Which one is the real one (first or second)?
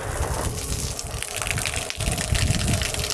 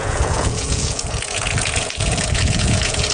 first